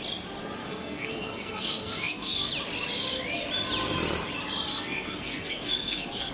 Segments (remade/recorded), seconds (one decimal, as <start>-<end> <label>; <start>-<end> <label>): 0.0-0.6 recorded; 0.6-2.5 remade; 2.5-4.7 recorded; 4.7-6.3 remade